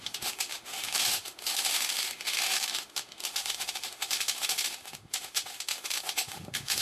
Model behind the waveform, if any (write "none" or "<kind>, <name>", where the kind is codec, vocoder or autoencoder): autoencoder, DAC-VAE